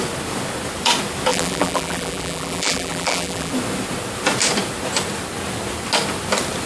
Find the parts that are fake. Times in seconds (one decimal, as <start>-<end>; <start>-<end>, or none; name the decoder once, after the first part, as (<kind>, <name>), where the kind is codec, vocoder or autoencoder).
1.3-3.5 (vocoder, BigVGAN v2)